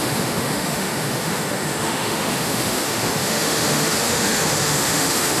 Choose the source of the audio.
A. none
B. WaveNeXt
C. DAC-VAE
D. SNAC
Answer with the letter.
C